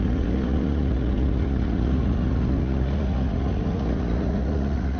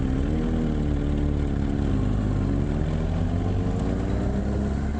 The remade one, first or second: first